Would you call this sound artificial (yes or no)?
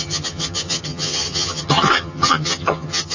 yes